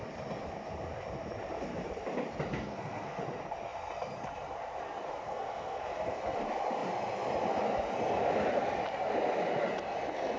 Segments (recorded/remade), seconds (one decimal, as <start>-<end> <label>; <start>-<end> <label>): 0.0-2.5 recorded; 2.5-3.2 remade; 3.2-5.2 recorded; 5.2-6.2 remade; 6.2-10.4 recorded